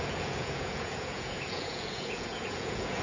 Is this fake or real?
fake